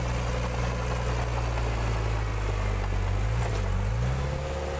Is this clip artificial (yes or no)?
no